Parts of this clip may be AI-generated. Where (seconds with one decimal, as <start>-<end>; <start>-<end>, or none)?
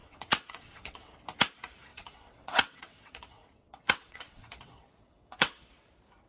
0.0-1.2; 1.9-5.7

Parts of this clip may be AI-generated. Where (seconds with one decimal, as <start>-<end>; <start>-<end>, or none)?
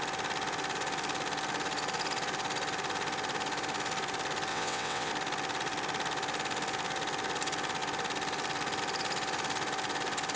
4.5-5.1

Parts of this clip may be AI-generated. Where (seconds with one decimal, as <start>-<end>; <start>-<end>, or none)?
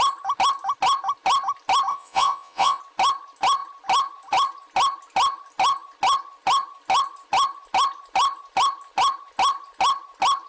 1.9-2.8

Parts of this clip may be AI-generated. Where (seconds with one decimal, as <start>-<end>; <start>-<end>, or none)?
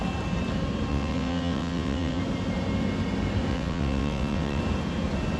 0.9-2.2; 3.5-4.6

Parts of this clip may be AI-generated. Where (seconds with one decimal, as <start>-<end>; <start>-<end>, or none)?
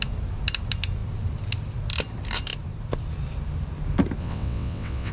4.2-5.1